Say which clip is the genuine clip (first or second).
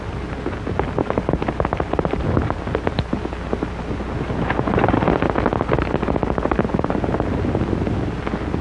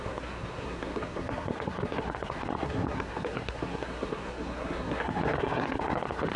first